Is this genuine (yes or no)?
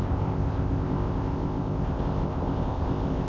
no